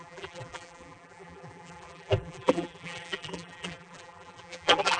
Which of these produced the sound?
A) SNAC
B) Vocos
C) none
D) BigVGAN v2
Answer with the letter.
D